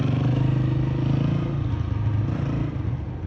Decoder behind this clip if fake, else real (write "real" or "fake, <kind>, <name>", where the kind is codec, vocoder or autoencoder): real